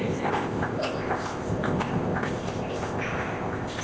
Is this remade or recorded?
remade